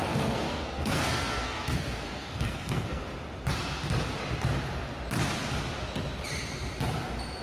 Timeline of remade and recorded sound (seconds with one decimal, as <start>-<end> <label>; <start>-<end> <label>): 0.0-3.0 remade; 3.0-7.4 recorded